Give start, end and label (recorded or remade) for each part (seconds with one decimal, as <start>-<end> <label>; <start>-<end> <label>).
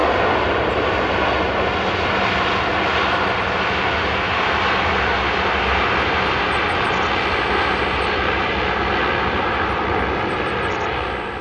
0.0-11.4 recorded